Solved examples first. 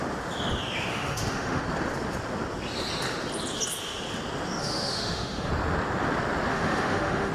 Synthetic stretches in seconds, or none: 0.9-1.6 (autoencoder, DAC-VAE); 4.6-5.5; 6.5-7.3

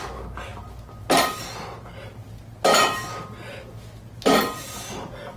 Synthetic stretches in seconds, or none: none